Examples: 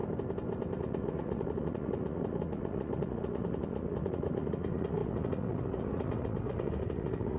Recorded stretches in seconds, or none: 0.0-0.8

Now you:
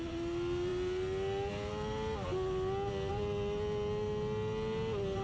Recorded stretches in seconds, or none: 0.0-5.2

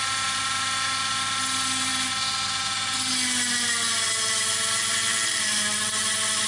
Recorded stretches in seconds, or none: 0.0-6.5

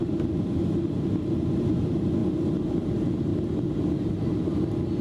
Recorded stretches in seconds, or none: 0.0-5.0

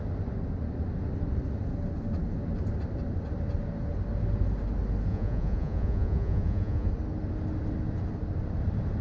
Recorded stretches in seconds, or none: 0.0-5.1; 6.9-9.0

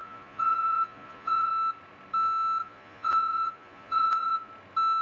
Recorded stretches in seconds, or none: 1.5-2.6; 4.5-5.0

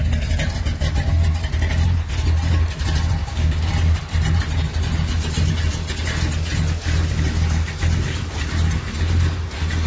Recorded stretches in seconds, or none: 0.0-3.2; 3.7-9.9